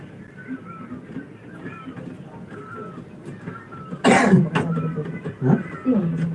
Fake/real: real